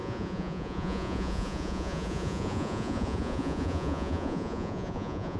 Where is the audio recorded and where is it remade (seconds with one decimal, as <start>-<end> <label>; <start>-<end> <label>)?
0.0-5.4 remade